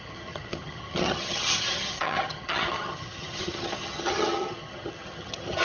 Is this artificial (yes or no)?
yes